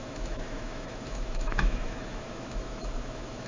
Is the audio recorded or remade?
remade